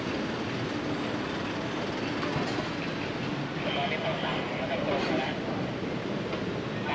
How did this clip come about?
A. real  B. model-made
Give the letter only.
A